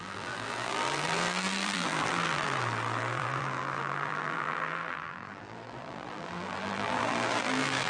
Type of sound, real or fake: fake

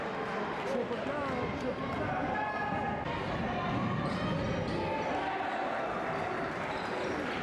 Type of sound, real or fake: real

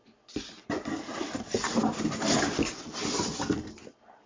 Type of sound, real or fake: real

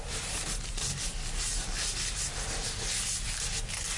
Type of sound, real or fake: real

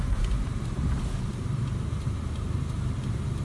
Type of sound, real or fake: fake